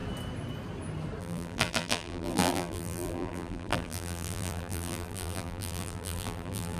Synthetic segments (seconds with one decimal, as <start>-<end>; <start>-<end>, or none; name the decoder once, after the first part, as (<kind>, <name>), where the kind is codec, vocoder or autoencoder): 1.2-6.8 (vocoder, BigVGAN v2)